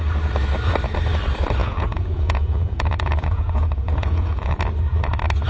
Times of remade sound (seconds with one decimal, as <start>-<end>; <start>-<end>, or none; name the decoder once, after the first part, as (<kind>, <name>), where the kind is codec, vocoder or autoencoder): 1.6-4.6 (vocoder, Vocos)